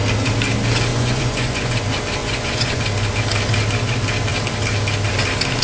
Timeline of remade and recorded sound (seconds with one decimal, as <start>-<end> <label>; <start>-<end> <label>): 0.0-0.9 recorded; 0.9-1.7 remade; 1.7-2.2 recorded; 2.2-2.8 remade; 2.8-5.6 recorded